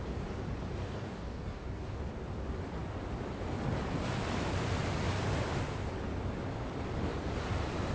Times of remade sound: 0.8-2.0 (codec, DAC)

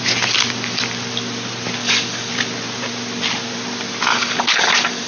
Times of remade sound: 1.8-2.3 (codec, DAC); 4.1-5.1

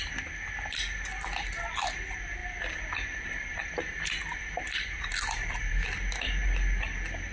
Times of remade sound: none

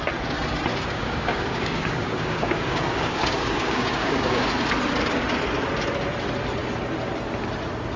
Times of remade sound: 0.7-4.5 (codec, DAC)

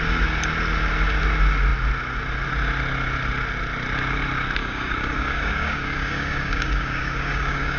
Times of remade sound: 4.6-7.8 (codec, DAC)

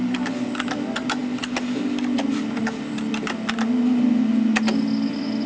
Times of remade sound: none

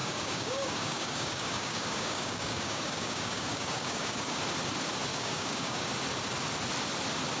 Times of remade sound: 0.0-4.4 (codec, DAC); 5.1-5.9